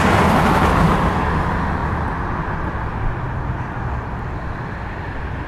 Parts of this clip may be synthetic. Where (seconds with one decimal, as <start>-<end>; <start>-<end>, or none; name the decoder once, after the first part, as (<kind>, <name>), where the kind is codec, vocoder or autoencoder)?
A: none